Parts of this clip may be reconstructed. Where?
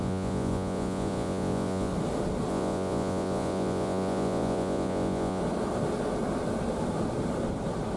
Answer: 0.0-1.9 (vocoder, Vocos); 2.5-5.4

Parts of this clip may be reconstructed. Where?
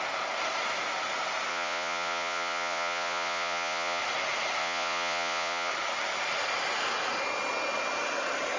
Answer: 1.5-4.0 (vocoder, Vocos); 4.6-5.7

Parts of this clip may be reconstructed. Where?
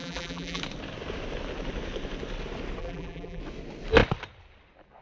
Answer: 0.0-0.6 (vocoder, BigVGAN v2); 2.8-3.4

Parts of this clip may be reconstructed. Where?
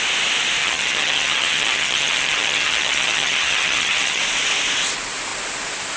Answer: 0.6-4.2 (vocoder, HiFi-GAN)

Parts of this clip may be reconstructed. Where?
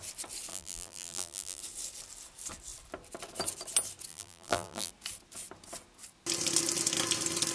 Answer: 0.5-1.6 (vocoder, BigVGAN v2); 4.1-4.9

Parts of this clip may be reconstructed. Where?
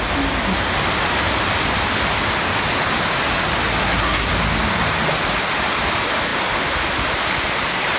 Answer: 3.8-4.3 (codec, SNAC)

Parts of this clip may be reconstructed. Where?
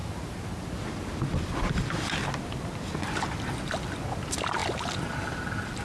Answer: none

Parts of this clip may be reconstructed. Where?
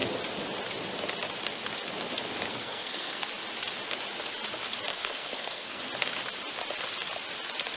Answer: 2.5-3.3 (codec, SNAC); 4.9-5.8